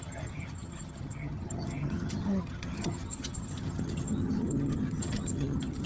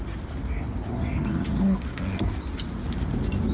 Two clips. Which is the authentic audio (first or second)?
second